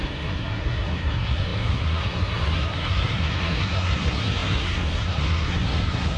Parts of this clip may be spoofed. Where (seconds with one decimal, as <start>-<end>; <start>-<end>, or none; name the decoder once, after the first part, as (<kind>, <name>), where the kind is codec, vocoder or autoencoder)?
0.0-6.2 (codec, SNAC)